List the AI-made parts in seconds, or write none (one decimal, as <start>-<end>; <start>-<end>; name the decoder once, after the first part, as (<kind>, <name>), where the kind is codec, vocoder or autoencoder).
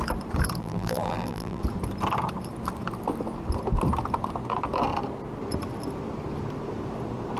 0.6-1.6 (vocoder, BigVGAN v2)